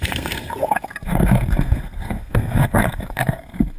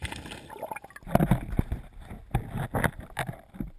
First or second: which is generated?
first